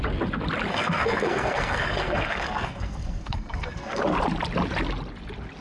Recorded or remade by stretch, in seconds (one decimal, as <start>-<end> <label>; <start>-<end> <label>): 0.0-0.7 recorded; 0.7-4.0 remade; 4.0-5.6 recorded